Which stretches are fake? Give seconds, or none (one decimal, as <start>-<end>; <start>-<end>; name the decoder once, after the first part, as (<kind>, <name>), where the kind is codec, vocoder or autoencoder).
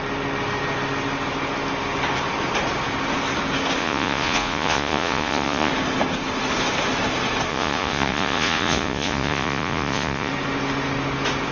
3.8-5.7 (vocoder, Vocos); 7.5-10.3